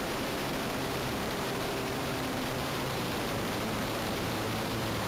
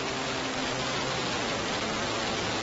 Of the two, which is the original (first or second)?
second